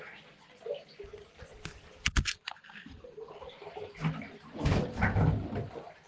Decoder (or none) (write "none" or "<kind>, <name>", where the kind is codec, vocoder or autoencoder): none